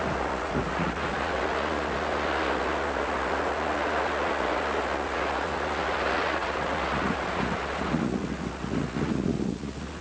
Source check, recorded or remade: remade